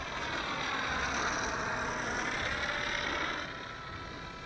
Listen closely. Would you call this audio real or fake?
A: real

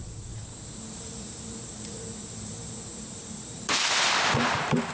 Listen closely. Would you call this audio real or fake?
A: fake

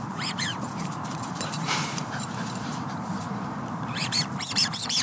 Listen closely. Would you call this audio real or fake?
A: fake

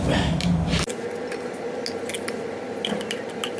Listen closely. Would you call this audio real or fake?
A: real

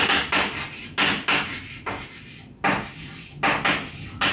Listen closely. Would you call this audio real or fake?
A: real